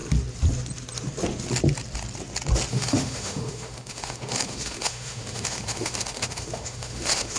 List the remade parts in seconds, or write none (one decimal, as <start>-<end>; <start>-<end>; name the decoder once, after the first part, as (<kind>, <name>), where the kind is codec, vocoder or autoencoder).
2.7-7.4 (autoencoder, DAC-VAE)